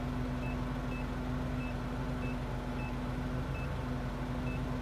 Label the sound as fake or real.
real